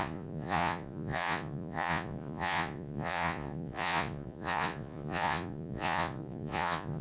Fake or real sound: fake